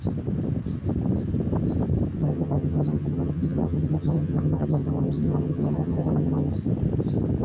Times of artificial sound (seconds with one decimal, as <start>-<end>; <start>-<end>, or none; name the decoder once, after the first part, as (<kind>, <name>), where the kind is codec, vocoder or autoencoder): 2.2-6.5 (vocoder, HiFi-GAN)